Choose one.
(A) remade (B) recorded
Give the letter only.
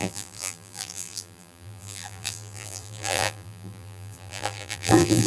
A